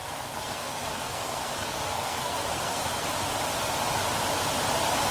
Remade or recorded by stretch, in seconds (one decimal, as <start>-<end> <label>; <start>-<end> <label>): 0.0-3.1 remade; 3.1-5.1 recorded